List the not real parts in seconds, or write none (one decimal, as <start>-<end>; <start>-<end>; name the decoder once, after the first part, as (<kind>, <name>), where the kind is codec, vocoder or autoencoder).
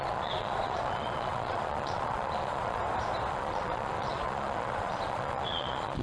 0.0-2.8 (vocoder, Vocos); 3.3-6.0